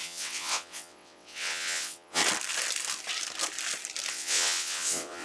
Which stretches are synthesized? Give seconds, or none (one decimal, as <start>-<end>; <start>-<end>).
0.0-2.2; 4.1-5.2